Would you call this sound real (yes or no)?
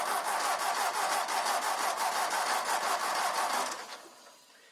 yes